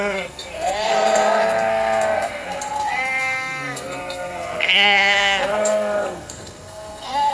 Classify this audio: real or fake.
fake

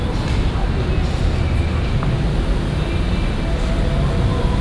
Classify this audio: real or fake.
real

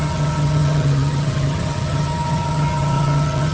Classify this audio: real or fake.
fake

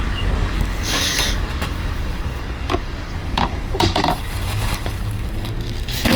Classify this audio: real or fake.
fake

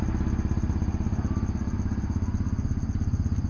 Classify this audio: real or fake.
real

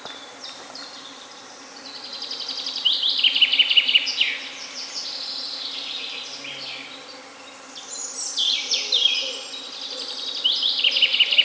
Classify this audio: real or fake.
real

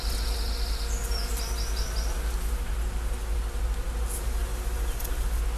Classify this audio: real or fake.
real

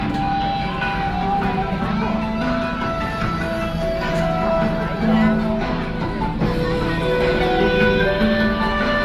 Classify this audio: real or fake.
real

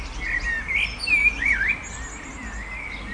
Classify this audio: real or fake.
real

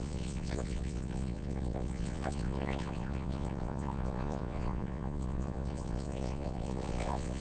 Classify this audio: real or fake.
fake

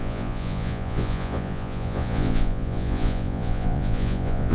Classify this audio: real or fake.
fake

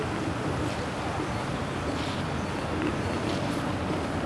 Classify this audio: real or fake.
real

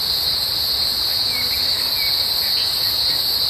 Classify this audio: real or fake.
real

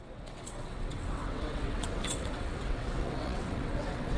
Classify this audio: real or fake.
fake